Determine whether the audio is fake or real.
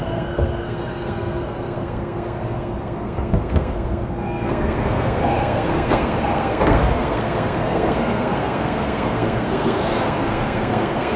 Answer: fake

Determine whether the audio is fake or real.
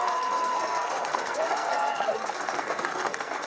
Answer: fake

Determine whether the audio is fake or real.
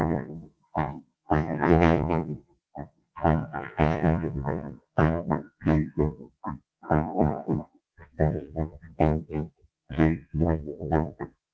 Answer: fake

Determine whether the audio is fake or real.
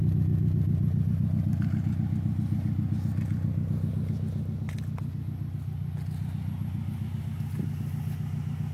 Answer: real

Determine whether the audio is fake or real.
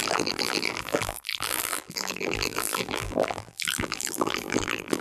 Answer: fake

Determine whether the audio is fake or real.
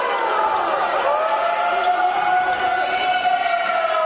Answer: real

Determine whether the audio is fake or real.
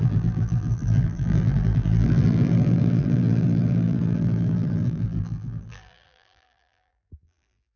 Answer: fake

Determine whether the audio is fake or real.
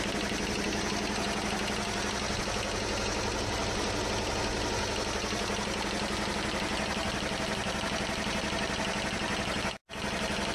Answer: real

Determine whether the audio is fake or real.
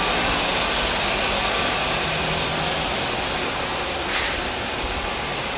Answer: real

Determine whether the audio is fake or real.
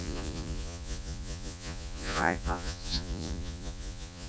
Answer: fake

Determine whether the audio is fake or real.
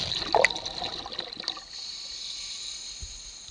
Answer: real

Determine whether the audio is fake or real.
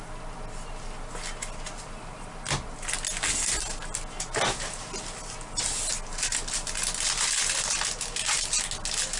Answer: real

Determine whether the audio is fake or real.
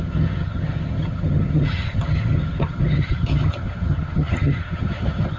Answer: fake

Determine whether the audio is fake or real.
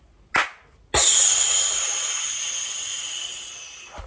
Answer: real